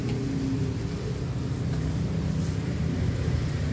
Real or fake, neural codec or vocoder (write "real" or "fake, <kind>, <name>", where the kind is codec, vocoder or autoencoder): real